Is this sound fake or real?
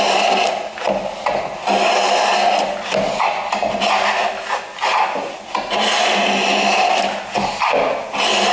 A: real